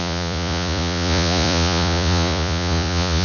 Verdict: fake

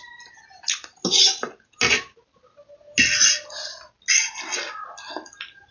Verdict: real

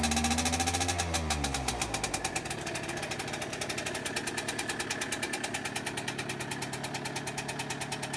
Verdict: real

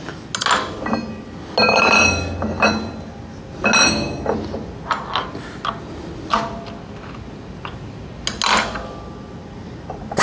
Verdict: real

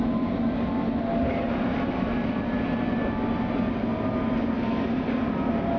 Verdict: real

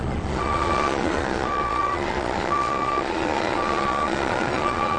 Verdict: fake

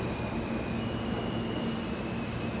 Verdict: real